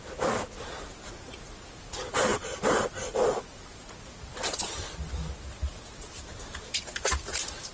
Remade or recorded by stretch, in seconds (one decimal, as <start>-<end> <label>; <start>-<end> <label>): 0.0-2.3 recorded; 2.3-3.4 remade; 3.4-7.7 recorded